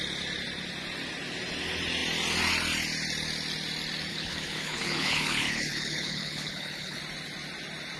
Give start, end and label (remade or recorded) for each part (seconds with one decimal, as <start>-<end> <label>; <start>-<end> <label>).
0.0-4.1 recorded; 4.1-7.0 remade; 7.0-8.0 recorded